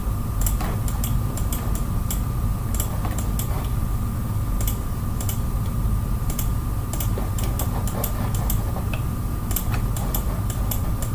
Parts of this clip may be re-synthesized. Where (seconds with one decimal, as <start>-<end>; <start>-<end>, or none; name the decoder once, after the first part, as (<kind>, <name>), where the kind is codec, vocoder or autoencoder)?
none